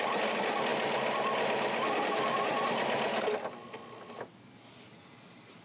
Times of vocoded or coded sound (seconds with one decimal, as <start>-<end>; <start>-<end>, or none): none